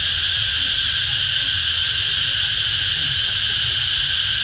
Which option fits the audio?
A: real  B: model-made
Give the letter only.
A